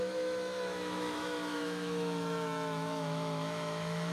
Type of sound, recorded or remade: remade